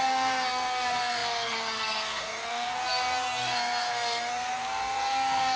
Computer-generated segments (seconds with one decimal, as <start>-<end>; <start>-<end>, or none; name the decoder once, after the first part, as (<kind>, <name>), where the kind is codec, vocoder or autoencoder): 0.0-5.6 (codec, SNAC)